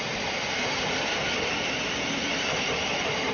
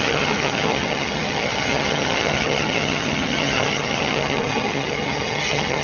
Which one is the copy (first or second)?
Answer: second